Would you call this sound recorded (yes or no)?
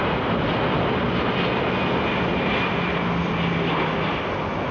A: yes